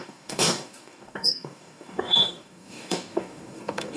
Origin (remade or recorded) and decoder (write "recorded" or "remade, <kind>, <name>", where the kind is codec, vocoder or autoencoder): remade, codec, DAC